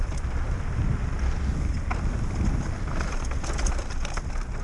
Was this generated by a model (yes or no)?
no